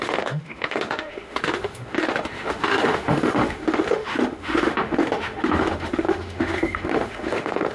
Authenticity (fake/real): fake